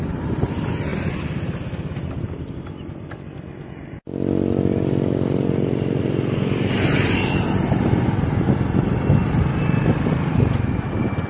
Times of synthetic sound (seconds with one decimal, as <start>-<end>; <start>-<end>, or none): none